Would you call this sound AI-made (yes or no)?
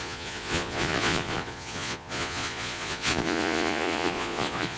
yes